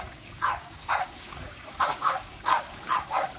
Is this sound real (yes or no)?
no